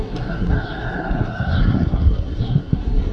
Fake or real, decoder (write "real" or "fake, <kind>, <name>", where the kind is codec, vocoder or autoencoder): fake, codec, SNAC